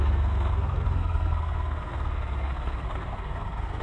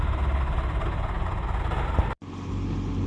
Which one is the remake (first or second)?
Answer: first